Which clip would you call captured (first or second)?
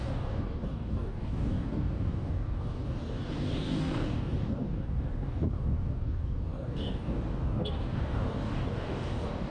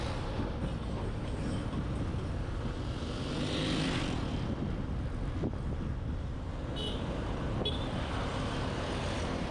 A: second